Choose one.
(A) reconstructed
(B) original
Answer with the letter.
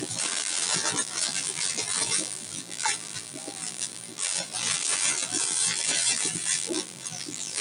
A